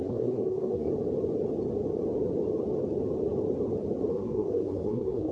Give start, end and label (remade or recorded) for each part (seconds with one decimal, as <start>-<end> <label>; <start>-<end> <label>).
0.0-0.9 remade; 0.9-4.1 recorded; 4.1-5.3 remade